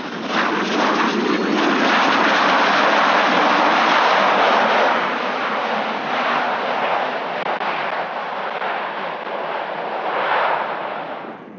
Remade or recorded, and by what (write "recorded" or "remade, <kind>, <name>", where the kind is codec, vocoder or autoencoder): recorded